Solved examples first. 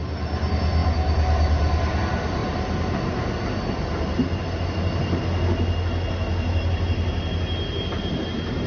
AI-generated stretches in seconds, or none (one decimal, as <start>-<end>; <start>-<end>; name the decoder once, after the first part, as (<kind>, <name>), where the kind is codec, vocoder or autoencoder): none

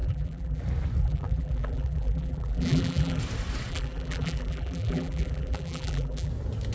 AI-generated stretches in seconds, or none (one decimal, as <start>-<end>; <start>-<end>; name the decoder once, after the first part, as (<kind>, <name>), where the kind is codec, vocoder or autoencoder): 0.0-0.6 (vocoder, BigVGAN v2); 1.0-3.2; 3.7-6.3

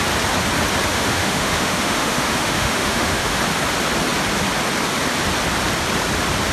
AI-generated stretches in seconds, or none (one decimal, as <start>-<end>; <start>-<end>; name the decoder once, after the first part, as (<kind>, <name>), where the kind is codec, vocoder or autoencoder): 0.9-3.4 (autoencoder, DAC-VAE)

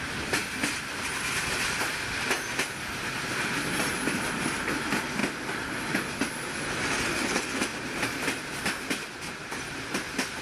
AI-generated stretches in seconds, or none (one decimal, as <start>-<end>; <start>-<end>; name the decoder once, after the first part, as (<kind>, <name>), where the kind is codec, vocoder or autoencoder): none

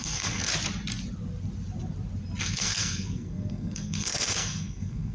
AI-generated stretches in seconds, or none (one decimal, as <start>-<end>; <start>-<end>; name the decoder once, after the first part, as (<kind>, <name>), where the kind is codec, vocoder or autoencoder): 0.0-0.5 (codec, SNAC); 2.4-5.1

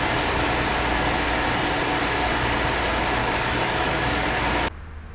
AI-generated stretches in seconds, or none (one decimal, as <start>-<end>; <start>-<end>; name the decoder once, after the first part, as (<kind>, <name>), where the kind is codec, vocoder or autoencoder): 3.2-4.4 (codec, DAC)

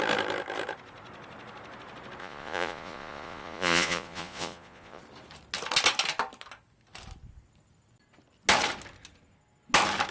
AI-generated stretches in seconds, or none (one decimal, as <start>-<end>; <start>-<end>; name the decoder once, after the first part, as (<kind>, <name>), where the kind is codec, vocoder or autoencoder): 2.2-5.0 (vocoder, Vocos)